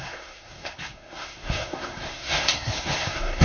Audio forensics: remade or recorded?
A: remade